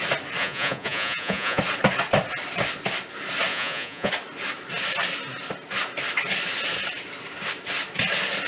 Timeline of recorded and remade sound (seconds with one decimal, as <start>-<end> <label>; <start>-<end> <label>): 0.0-0.4 recorded; 0.4-1.6 remade; 1.6-3.5 recorded; 3.5-4.1 remade; 4.1-8.5 recorded